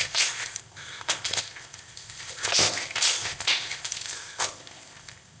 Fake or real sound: fake